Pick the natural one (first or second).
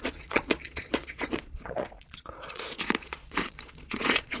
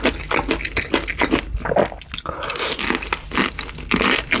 second